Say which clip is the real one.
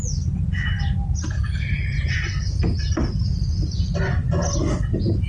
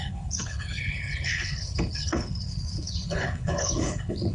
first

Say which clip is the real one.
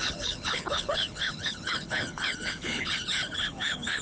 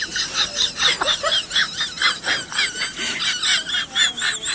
second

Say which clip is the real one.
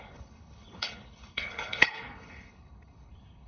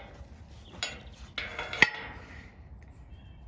second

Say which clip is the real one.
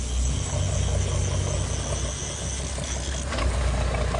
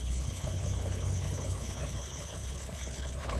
first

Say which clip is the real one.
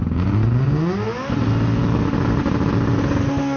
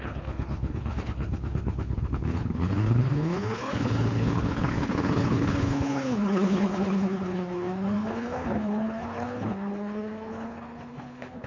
first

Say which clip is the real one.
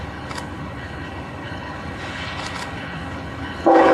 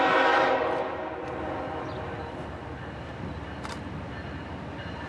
second